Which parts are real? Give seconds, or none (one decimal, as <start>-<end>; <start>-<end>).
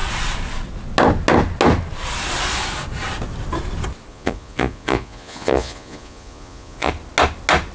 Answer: 0.0-4.1; 6.9-7.7